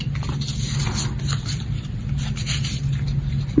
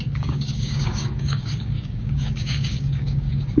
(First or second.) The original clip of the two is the first